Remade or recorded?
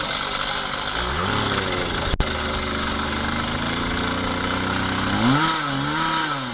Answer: recorded